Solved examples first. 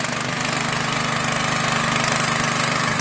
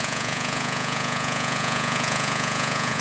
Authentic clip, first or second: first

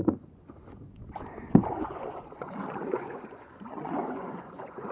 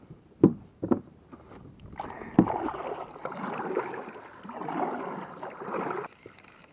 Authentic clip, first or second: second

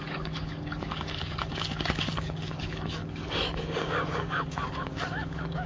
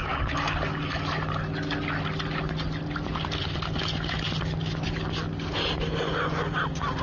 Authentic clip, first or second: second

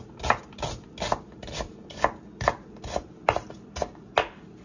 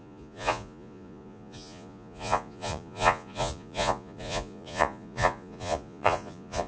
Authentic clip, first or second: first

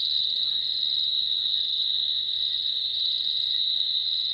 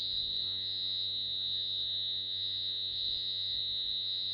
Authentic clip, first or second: first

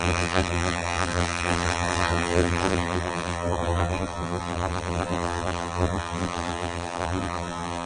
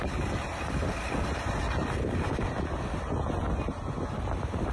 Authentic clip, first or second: second